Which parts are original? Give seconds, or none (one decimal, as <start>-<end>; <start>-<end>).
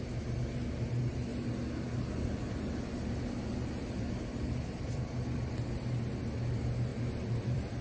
0.0-6.9